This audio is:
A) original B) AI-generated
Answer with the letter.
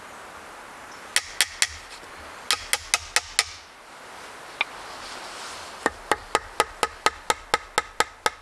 A